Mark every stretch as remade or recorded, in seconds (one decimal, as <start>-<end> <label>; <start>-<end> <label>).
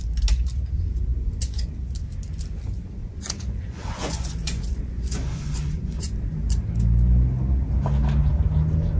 0.0-1.1 recorded; 1.1-1.7 remade; 1.7-3.0 recorded; 3.0-6.2 remade; 6.2-9.0 recorded